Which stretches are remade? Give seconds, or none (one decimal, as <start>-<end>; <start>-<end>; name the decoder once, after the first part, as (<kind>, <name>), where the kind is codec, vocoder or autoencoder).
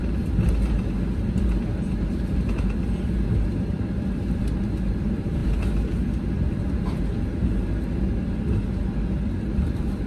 none